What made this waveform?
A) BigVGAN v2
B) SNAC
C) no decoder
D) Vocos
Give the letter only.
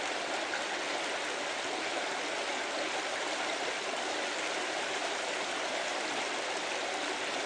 C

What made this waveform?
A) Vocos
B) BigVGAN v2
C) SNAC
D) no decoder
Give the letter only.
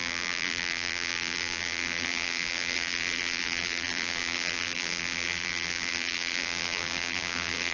B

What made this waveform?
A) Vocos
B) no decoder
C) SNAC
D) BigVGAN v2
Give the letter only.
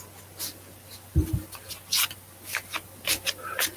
B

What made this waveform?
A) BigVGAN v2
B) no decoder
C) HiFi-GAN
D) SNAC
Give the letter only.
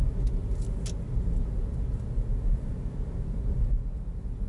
B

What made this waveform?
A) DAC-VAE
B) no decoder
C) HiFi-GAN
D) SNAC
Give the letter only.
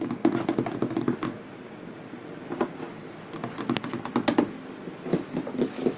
B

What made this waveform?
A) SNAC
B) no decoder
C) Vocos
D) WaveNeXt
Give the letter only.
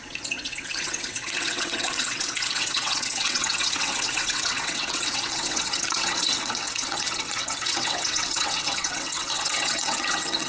D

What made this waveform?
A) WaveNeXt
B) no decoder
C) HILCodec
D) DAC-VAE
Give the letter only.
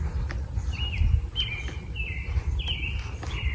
B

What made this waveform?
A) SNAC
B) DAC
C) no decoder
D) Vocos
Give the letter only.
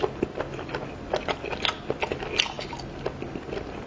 C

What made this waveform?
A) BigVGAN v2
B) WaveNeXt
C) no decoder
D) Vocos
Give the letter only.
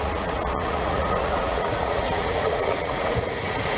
D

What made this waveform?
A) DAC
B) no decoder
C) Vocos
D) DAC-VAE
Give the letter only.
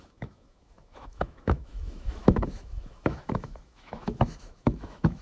D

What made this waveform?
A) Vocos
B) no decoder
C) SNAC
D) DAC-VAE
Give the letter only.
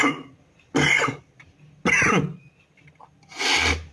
B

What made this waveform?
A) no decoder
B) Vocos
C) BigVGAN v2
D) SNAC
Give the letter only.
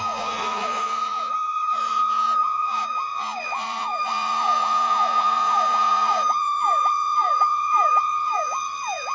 B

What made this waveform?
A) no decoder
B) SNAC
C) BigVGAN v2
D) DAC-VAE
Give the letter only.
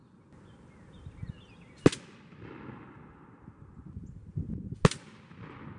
A